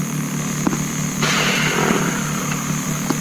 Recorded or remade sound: recorded